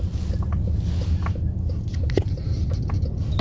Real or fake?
real